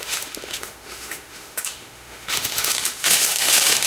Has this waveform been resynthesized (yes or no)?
yes